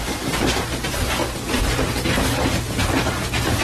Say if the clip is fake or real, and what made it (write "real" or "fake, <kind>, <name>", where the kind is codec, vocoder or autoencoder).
fake, vocoder, BigVGAN v2